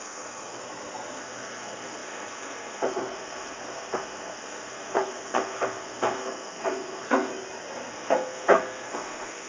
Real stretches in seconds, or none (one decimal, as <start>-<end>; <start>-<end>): 0.6-1.1; 7.3-7.9